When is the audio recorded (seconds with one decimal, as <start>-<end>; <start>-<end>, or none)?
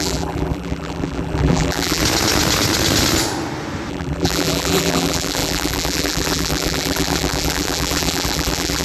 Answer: 2.0-3.9